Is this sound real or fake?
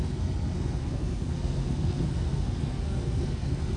fake